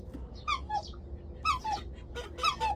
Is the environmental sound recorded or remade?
recorded